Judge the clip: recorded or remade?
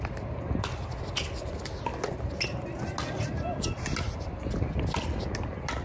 recorded